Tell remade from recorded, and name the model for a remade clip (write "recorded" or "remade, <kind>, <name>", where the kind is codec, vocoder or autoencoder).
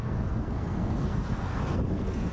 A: remade, codec, SNAC